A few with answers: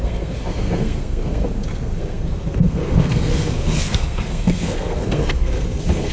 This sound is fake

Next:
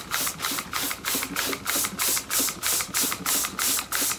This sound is fake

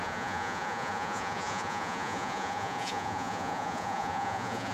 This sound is fake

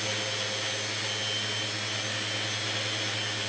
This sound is real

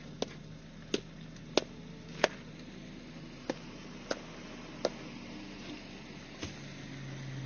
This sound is real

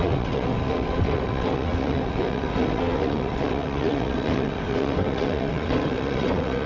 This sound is fake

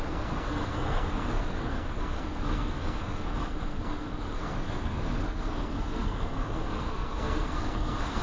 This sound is fake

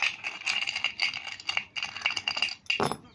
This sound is real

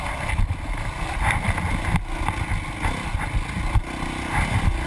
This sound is real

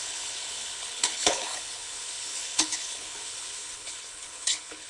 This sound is fake